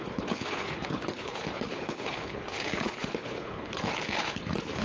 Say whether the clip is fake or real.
fake